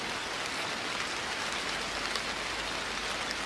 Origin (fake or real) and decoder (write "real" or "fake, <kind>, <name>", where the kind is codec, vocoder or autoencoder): real